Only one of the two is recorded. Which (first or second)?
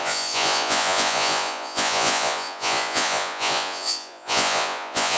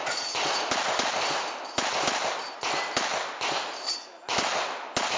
second